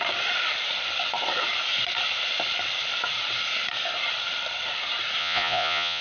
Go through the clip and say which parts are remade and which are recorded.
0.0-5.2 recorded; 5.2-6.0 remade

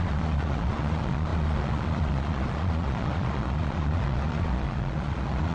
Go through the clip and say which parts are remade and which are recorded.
0.0-5.5 remade

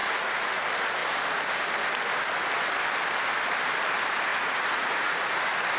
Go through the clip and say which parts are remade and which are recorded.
0.0-0.6 remade; 0.6-4.3 recorded; 4.3-5.3 remade; 5.3-5.8 recorded

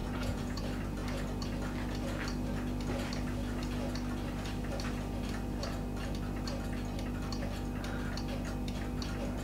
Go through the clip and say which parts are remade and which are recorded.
0.0-0.6 remade; 0.6-9.4 recorded

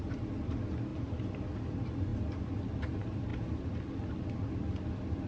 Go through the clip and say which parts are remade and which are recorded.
0.0-5.3 recorded

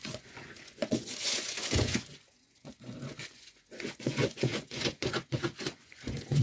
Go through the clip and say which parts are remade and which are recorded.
0.0-6.4 remade

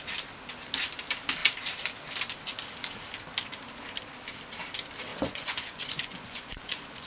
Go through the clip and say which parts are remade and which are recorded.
0.0-5.1 recorded; 5.1-7.1 remade

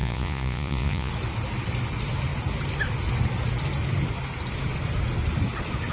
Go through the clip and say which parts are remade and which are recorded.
0.0-1.1 remade; 1.1-5.9 recorded